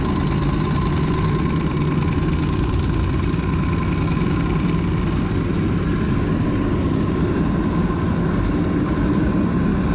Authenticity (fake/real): real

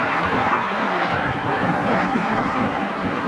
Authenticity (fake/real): fake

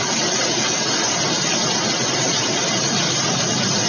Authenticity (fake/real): real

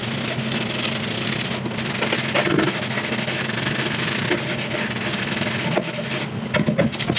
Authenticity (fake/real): real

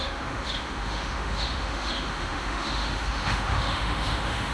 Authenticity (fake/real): fake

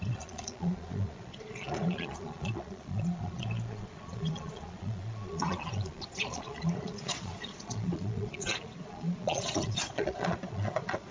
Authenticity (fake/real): fake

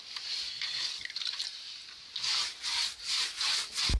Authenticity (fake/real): real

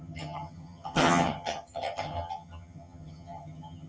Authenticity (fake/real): fake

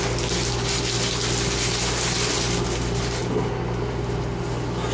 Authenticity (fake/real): real